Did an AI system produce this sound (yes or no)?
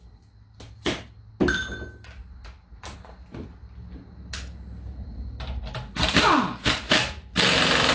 no